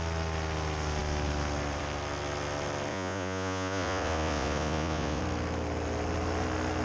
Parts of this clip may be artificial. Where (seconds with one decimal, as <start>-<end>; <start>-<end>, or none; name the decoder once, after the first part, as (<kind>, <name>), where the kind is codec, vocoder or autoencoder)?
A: 2.9-5.2 (vocoder, Vocos)